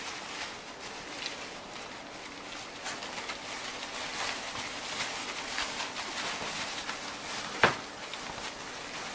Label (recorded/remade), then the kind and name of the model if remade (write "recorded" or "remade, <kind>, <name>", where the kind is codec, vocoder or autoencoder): recorded